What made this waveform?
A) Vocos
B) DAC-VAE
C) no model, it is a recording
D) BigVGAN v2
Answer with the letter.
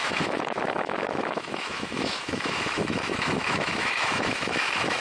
B